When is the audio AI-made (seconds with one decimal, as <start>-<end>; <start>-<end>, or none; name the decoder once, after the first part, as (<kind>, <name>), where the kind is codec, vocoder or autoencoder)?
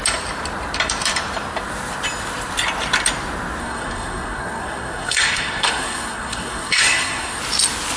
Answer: 3.6-7.4 (codec, SNAC)